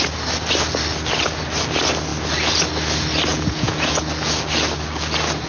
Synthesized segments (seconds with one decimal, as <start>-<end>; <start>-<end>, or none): 3.3-4.0